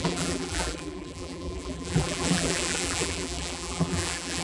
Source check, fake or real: fake